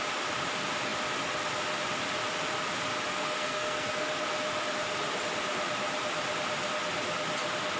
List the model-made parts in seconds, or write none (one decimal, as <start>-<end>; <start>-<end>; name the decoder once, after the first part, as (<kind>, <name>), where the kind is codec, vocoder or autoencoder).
3.1-4.1 (codec, SNAC)